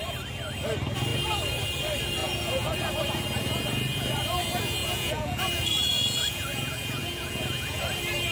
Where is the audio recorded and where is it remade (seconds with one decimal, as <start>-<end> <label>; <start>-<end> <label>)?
0.0-2.2 recorded; 2.2-2.9 remade; 2.9-4.8 recorded; 4.8-7.8 remade; 7.8-8.3 recorded